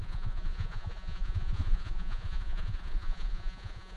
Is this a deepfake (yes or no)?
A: yes